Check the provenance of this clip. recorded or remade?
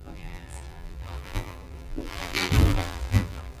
remade